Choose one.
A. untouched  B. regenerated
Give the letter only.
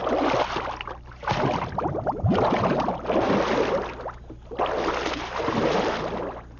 A